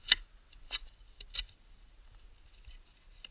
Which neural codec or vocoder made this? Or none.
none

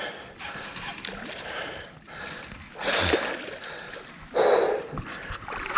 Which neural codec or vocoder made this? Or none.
none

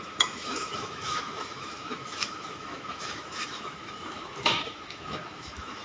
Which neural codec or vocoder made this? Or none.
autoencoder, DAC-VAE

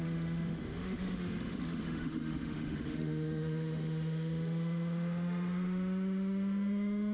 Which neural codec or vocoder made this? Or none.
autoencoder, DAC-VAE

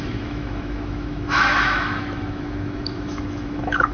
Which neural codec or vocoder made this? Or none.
autoencoder, DAC-VAE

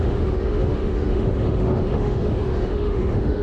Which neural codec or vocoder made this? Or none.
autoencoder, DAC-VAE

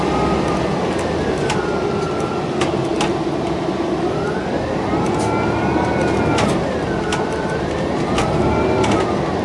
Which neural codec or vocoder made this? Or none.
none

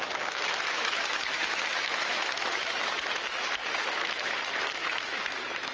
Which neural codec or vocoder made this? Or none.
autoencoder, DAC-VAE